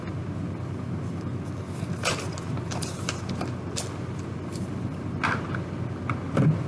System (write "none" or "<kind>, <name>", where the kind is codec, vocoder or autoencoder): none